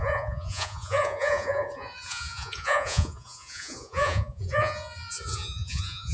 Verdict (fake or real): fake